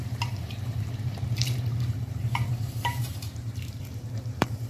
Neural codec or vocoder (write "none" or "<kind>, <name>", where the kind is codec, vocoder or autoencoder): vocoder, BigVGAN v2